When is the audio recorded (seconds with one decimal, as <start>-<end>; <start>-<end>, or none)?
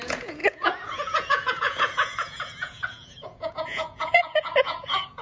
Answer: none